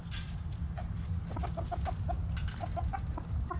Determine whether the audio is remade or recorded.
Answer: recorded